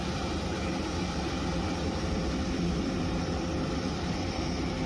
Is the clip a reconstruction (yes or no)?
yes